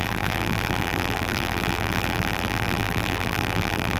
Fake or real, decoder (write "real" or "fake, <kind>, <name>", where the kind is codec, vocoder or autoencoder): fake, vocoder, BigVGAN v2